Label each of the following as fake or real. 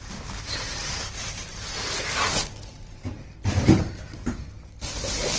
real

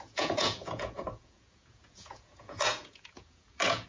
fake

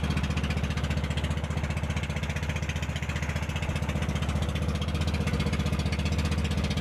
real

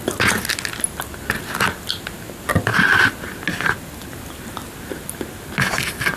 real